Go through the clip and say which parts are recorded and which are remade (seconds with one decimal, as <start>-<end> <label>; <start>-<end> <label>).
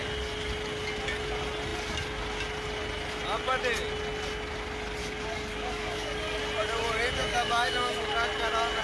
0.0-5.0 recorded; 5.0-6.4 remade; 6.4-7.2 recorded; 7.2-8.1 remade; 8.1-8.8 recorded